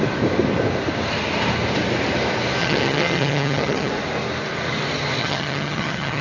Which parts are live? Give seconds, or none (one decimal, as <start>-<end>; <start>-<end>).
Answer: 0.0-2.6; 3.9-5.2